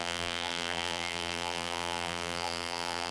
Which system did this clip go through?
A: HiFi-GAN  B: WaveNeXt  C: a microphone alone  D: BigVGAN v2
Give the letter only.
D